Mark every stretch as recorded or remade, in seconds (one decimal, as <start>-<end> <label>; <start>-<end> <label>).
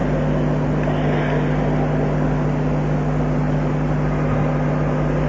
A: 0.0-5.3 recorded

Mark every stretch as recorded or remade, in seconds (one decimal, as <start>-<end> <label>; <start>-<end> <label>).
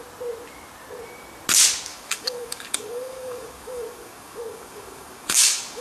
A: 0.0-1.9 recorded; 1.9-5.8 remade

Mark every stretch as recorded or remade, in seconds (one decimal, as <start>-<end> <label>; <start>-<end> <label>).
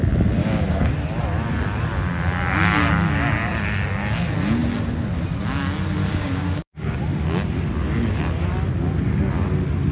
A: 0.0-0.4 recorded; 0.4-0.9 remade; 0.9-6.0 recorded; 6.0-7.0 remade; 7.0-9.9 recorded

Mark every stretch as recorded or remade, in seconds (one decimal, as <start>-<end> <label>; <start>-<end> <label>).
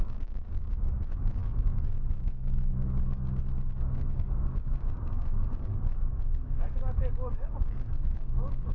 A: 0.0-8.7 remade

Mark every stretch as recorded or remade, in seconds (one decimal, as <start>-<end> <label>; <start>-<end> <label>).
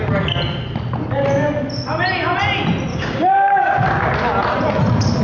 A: 0.0-2.9 recorded; 2.9-3.7 remade; 3.7-5.2 recorded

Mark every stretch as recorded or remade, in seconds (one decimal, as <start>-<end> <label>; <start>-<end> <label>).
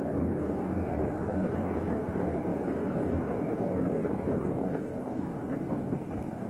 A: 0.0-6.5 remade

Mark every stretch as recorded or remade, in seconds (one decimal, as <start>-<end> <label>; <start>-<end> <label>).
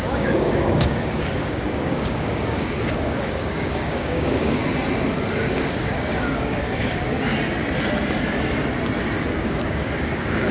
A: 0.0-4.6 remade; 4.6-5.4 recorded; 5.4-7.3 remade; 7.3-9.4 recorded; 9.4-10.5 remade